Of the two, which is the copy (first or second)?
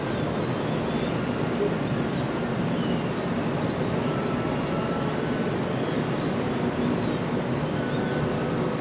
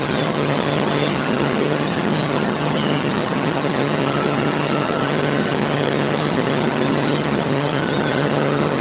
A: second